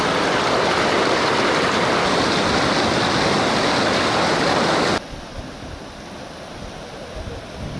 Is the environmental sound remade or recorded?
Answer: recorded